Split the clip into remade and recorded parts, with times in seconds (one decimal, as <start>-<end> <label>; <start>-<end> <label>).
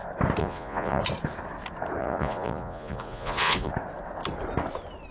0.0-0.4 recorded; 0.4-1.0 remade; 1.0-2.0 recorded; 2.0-3.7 remade; 3.7-5.1 recorded